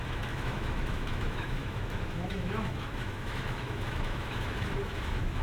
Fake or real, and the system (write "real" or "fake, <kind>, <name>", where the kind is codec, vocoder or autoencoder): fake, autoencoder, DAC-VAE